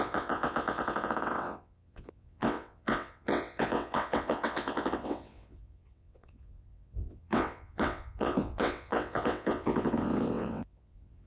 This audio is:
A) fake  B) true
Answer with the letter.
A